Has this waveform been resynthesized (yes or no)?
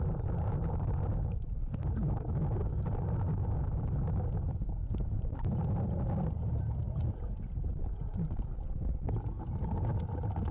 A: no